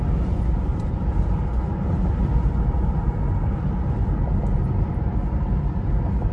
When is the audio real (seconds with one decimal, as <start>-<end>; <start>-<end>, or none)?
0.0-0.7; 1.5-6.3